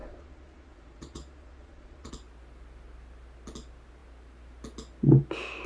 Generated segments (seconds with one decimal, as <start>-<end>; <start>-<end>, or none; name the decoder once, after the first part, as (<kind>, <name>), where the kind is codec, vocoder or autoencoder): 0.0-2.1 (vocoder, Vocos)

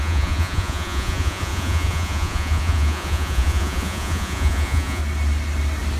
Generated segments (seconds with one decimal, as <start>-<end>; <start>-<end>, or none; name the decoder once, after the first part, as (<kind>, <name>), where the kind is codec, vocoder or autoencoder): 0.0-5.0 (vocoder, Vocos)

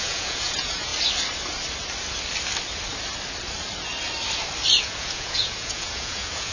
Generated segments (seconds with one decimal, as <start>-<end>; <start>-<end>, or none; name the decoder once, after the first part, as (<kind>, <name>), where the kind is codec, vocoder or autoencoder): 0.0-0.9 (vocoder, Vocos); 4.8-6.5

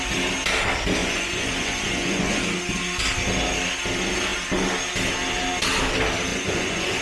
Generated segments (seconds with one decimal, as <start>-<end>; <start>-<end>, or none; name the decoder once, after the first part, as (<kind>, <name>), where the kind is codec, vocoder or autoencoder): 1.0-2.4 (vocoder, Vocos); 6.3-7.0

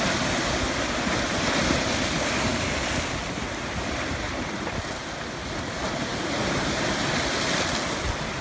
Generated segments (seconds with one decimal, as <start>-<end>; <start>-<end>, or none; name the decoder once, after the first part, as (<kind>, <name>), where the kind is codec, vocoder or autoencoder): none